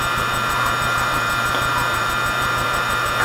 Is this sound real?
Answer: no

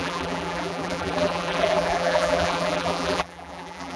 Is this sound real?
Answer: no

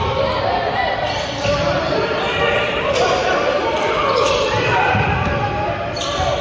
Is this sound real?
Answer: no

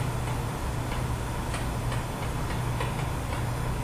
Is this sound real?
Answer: yes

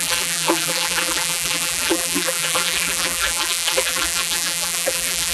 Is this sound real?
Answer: no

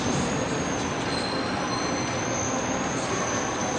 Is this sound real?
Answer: yes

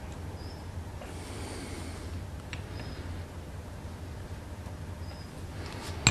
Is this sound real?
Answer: yes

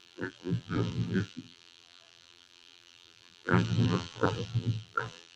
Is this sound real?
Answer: no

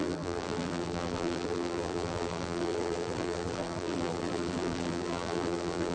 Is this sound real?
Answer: no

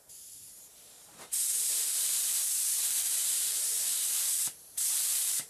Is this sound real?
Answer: no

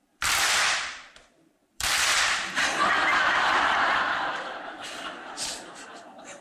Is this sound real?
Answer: no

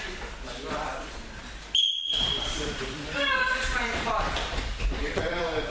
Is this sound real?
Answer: no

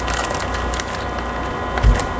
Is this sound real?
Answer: yes